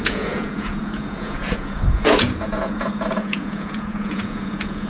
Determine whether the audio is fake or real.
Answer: fake